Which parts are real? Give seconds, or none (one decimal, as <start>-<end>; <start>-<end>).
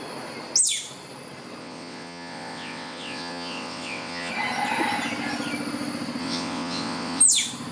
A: 0.0-1.6; 4.3-6.2; 7.2-7.7